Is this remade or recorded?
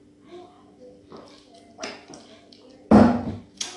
recorded